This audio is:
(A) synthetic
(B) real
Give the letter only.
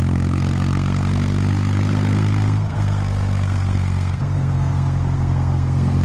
A